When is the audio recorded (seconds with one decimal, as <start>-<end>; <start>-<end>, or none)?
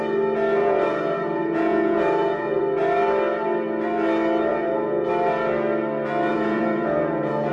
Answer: 0.0-0.6; 2.6-4.5; 5.1-6.3